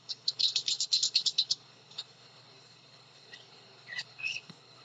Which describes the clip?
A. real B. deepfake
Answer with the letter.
B